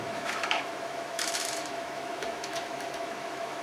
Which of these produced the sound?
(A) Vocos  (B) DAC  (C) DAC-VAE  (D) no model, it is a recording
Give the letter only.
C